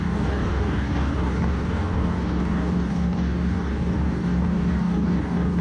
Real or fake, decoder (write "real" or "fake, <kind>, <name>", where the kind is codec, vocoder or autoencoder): fake, codec, DAC